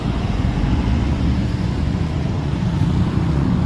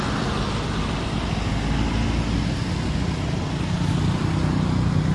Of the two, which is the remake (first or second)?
first